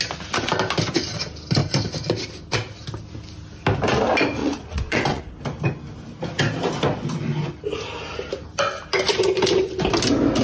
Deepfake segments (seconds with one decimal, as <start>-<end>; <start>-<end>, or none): 4.4-5.2